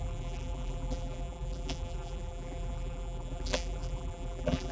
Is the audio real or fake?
fake